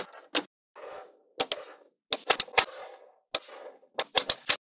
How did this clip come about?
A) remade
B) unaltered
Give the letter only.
B